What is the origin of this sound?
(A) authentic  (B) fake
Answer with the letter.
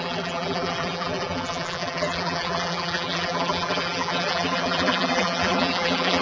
B